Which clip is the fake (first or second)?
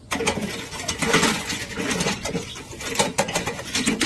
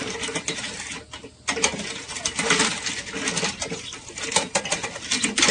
first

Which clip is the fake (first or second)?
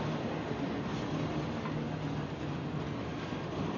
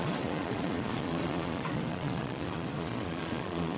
second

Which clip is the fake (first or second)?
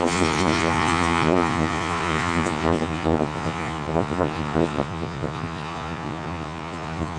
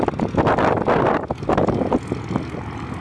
first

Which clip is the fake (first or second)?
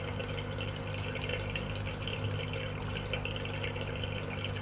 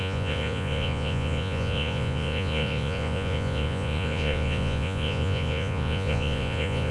second